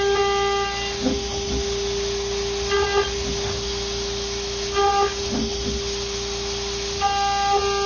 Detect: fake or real real